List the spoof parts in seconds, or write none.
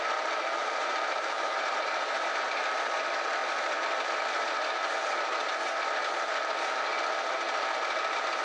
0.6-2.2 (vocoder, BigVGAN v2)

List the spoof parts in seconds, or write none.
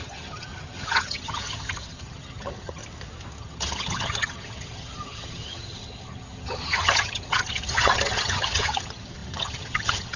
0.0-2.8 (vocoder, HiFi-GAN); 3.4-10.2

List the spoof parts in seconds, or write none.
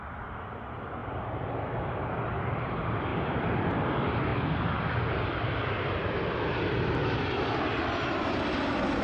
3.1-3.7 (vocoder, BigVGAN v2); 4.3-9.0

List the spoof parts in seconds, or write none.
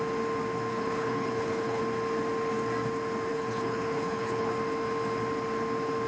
0.7-1.8 (codec, HILCodec); 3.3-4.5